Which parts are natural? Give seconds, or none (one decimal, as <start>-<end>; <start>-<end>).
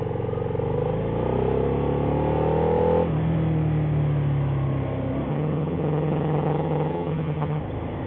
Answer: 0.0-5.3; 7.6-8.1